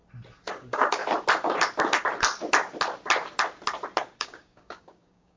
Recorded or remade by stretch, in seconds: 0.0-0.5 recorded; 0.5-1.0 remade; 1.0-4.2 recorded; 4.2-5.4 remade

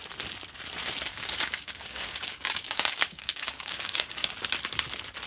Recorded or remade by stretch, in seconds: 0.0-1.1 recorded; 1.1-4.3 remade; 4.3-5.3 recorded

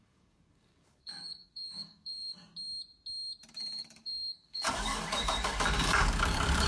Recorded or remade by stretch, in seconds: 0.0-2.5 remade; 2.5-3.5 recorded; 3.5-6.7 remade

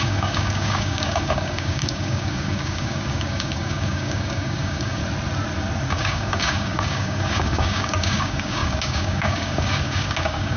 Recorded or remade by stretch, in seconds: 0.0-5.0 remade; 5.0-5.9 recorded; 5.9-10.6 remade

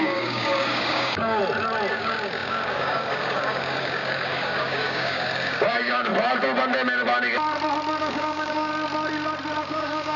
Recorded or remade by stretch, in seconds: 0.0-1.4 remade; 1.4-1.9 recorded; 1.9-6.1 remade; 6.1-8.0 recorded; 8.0-8.7 remade; 8.7-9.6 recorded; 9.6-10.2 remade